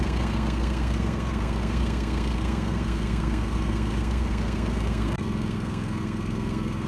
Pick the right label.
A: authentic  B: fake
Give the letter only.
B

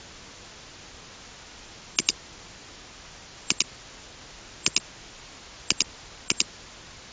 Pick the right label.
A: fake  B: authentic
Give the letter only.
B